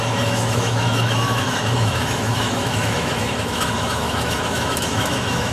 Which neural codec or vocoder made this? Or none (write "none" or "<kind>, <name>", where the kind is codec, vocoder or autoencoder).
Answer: autoencoder, DAC-VAE